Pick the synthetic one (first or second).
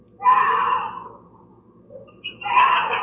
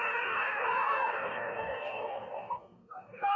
second